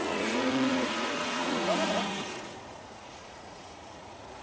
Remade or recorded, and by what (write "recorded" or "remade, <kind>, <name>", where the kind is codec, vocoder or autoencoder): remade, vocoder, Vocos